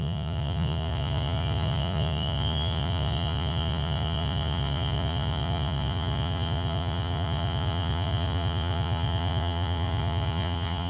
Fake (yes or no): yes